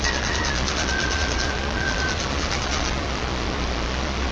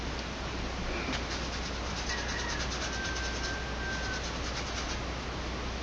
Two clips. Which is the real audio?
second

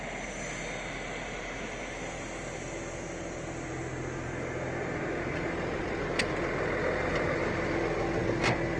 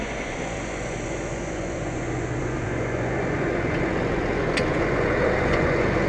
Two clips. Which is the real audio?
first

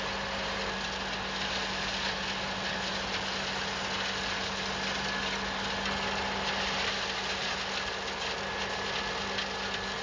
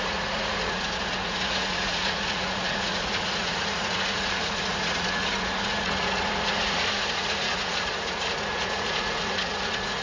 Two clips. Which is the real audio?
first